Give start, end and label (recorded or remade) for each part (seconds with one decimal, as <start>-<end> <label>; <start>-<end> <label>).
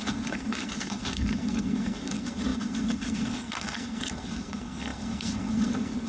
0.0-6.1 remade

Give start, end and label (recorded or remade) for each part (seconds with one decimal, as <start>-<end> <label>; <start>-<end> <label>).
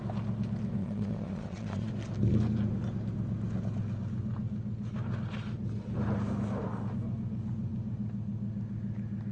0.0-0.8 recorded; 0.8-1.9 remade; 1.9-9.3 recorded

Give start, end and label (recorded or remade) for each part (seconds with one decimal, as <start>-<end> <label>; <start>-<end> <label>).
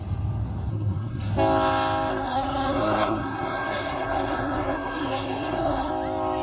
0.0-0.7 recorded; 0.7-1.3 remade; 1.3-2.1 recorded; 2.1-5.9 remade; 5.9-6.4 recorded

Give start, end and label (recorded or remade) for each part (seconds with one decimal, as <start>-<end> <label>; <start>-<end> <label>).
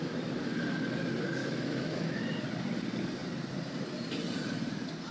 0.0-1.4 recorded; 1.4-2.2 remade; 2.2-5.1 recorded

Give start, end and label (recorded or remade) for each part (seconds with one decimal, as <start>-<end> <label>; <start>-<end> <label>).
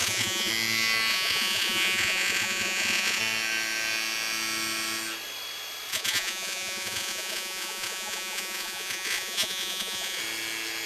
0.0-0.5 remade; 0.5-1.1 recorded; 1.1-3.2 remade; 3.2-5.9 recorded; 5.9-10.2 remade; 10.2-10.9 recorded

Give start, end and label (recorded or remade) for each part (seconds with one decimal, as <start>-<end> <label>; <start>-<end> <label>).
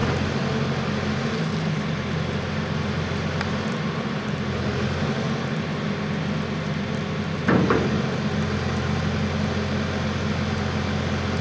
0.0-11.4 recorded